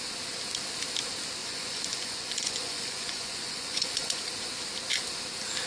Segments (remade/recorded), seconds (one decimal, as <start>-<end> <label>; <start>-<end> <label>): 0.0-1.4 recorded; 1.4-4.2 remade; 4.2-5.7 recorded